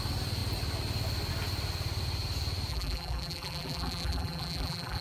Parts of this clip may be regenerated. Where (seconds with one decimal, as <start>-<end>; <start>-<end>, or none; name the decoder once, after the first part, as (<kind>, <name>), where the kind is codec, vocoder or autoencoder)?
2.7-5.0 (vocoder, BigVGAN v2)